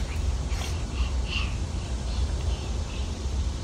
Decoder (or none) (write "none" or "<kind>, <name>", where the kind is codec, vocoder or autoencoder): none